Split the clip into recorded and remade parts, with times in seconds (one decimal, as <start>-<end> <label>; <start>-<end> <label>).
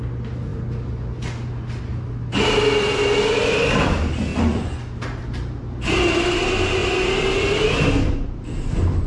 0.0-4.3 recorded; 4.3-4.8 remade; 4.8-9.1 recorded